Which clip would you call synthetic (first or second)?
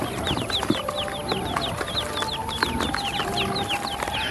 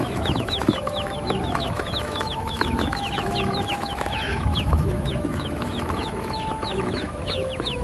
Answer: second